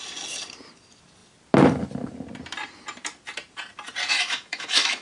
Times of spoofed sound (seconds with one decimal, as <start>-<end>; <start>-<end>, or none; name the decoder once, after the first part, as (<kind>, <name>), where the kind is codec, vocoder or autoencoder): 4.1-5.0 (autoencoder, DAC-VAE)